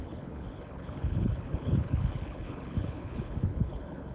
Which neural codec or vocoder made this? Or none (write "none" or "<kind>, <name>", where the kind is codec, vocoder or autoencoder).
codec, HILCodec